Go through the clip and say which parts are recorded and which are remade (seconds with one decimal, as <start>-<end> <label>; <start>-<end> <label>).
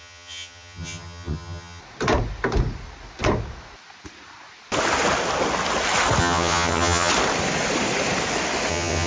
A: 0.0-1.8 remade; 1.8-6.2 recorded; 6.2-7.1 remade; 7.1-8.7 recorded; 8.7-9.1 remade